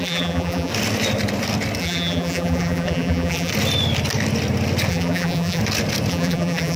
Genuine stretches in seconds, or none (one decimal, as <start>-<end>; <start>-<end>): 0.7-1.8; 3.5-4.9; 5.6-6.1